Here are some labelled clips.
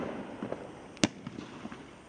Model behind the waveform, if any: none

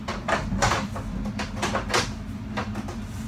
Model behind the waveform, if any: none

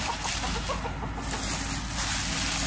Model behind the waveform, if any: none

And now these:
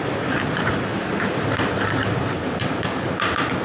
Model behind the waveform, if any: none